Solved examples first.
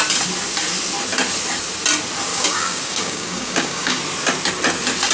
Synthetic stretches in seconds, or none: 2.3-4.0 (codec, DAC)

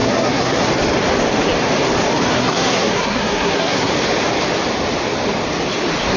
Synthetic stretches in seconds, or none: 0.0-0.7 (codec, SNAC); 2.4-3.9